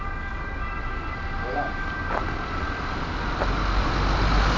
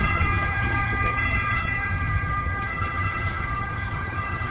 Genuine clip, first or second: first